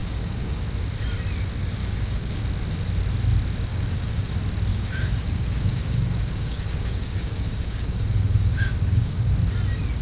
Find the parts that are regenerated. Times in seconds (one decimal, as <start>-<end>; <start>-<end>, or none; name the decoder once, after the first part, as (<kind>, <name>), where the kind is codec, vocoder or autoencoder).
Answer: 0.0-0.6 (codec, DAC); 1.8-2.4; 3.7-4.3; 4.7-9.3